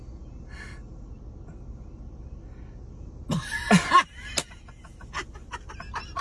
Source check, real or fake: real